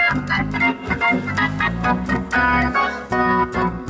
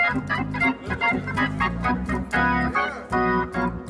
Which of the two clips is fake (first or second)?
first